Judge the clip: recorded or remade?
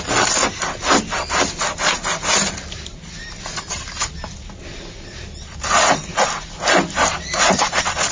recorded